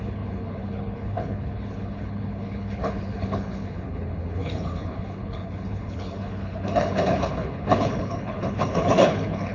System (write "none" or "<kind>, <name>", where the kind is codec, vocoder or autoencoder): codec, HILCodec